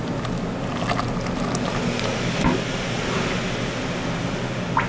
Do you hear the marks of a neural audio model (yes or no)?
no